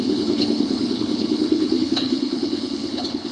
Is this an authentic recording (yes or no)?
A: no